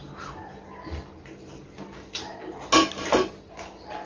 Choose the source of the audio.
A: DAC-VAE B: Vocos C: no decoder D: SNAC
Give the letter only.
C